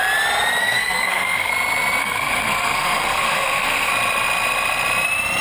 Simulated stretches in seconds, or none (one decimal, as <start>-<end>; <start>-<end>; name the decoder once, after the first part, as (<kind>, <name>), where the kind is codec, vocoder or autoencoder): 0.6-1.5 (codec, SNAC); 2.0-3.9